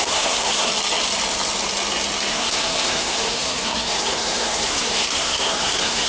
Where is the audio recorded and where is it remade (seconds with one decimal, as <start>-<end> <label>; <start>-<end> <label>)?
0.0-0.7 remade; 0.7-2.3 recorded; 2.3-6.1 remade